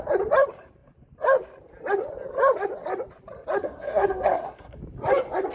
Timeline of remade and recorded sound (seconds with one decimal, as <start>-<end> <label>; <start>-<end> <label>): 0.0-3.6 recorded; 3.6-4.8 remade; 4.8-5.5 recorded